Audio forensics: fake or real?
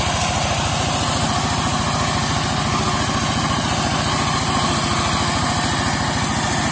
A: real